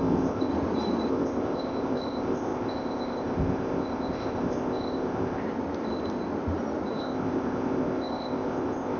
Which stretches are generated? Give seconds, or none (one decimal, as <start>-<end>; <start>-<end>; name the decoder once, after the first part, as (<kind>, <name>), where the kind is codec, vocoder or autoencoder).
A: 0.0-0.5 (codec, ZipCodec); 1.1-5.4; 7.0-9.0